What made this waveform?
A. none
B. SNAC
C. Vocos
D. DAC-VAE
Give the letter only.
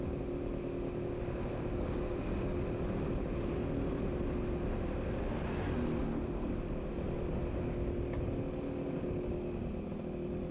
A